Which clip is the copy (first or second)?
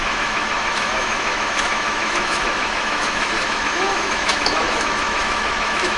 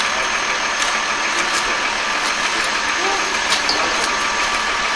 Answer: first